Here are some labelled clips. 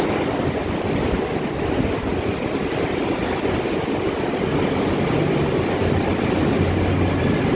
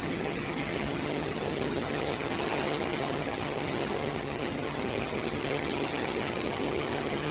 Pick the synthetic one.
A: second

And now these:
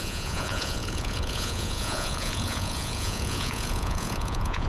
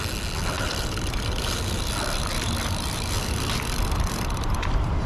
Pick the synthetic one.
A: first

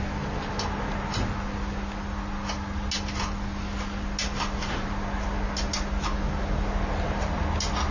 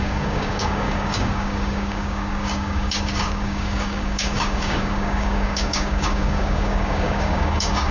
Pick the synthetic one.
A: second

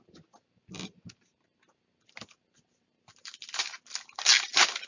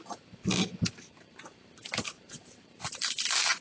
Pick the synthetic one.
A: second